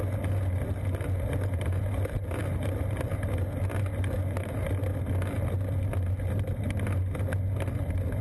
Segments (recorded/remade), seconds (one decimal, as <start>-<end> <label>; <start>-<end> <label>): 0.0-8.2 recorded